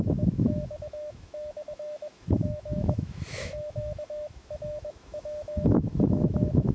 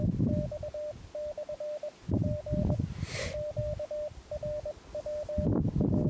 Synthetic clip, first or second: first